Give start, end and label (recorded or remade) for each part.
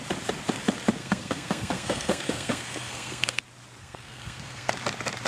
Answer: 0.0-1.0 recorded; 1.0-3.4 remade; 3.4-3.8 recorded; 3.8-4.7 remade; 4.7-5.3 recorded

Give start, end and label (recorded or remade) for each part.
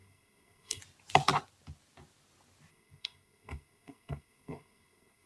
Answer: 0.0-0.8 remade; 0.8-2.7 recorded; 2.7-5.3 remade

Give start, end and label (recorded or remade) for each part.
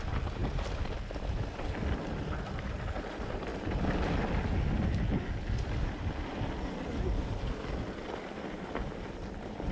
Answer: 0.0-9.7 recorded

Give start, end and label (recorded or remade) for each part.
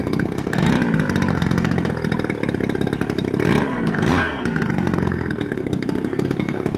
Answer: 0.0-0.7 remade; 0.7-1.3 recorded; 1.3-1.9 remade; 1.9-3.7 recorded; 3.7-6.8 remade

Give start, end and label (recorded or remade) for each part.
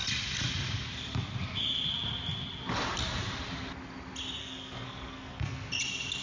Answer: 0.0-4.4 recorded; 4.4-5.7 remade; 5.7-6.2 recorded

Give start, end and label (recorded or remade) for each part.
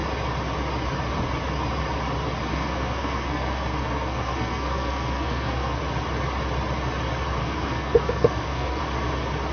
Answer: 0.0-2.5 recorded; 2.5-5.8 remade; 5.8-7.4 recorded; 7.4-8.8 remade; 8.8-9.5 recorded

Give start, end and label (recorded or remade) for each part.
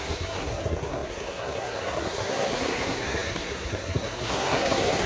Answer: 0.0-5.1 remade